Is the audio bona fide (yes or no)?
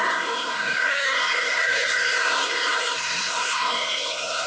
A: no